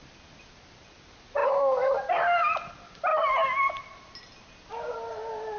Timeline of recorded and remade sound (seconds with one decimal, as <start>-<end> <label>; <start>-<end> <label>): 0.0-5.6 recorded